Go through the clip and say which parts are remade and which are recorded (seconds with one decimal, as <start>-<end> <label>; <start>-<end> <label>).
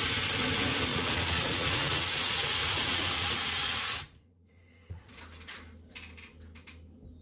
0.0-0.9 recorded; 0.9-5.2 remade; 5.2-7.2 recorded